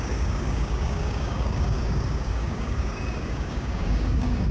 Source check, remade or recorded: remade